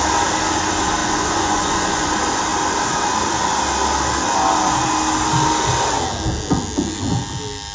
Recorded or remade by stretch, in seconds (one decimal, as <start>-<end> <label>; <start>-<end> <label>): 0.0-1.0 recorded; 1.0-2.1 remade; 2.1-7.7 recorded